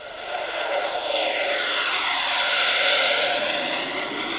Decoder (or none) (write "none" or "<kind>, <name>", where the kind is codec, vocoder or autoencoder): none